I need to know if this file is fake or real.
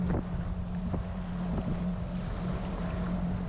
real